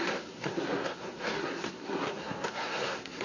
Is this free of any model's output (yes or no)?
no